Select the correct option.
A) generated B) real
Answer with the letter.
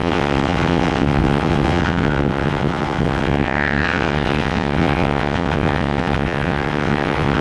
A